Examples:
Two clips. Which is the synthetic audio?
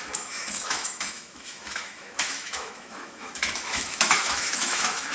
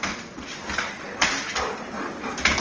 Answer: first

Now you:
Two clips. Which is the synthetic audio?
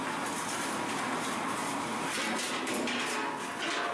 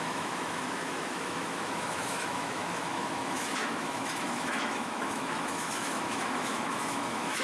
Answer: second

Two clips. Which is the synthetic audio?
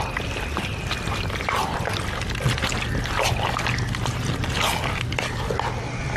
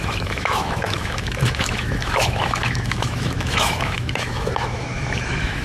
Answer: second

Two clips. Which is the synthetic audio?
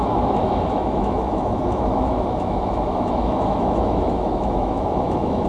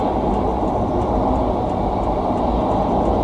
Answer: first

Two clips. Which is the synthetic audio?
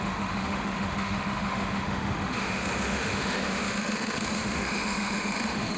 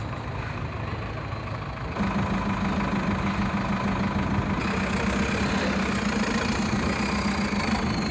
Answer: first